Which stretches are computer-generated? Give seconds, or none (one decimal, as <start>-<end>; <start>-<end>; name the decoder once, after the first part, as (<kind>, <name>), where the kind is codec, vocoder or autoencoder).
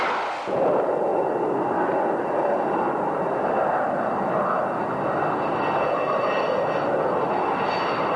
none